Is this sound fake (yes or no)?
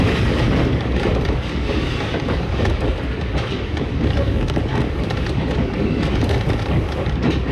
yes